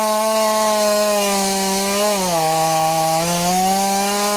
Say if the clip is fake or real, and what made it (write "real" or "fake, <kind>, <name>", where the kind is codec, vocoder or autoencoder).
fake, autoencoder, DAC-VAE